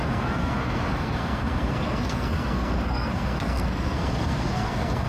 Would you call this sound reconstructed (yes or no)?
yes